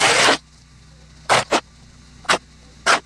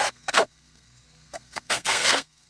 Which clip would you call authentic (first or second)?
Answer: first